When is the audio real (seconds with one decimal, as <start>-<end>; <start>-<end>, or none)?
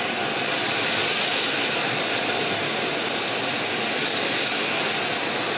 0.0-5.6